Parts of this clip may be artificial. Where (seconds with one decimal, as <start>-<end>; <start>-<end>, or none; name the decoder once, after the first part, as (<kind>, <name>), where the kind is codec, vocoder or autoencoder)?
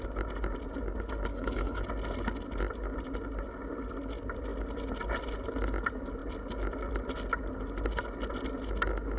1.3-1.8 (codec, HILCodec)